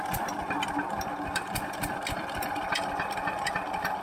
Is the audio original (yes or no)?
yes